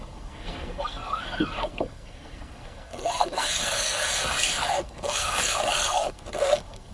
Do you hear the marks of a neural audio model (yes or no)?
yes